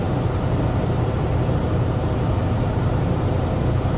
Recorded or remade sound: remade